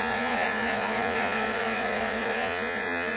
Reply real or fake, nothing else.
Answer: fake